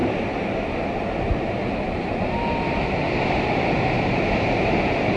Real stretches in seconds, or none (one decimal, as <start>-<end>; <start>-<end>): 0.0-3.1